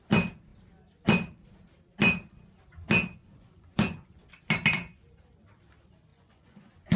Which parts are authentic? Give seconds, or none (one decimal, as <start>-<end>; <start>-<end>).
0.0-3.2; 4.3-6.1